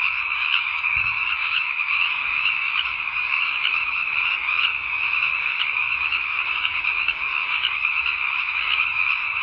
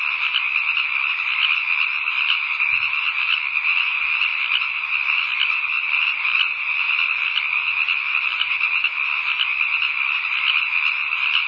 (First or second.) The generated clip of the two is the first